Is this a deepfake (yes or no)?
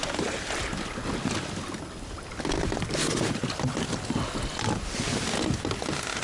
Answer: no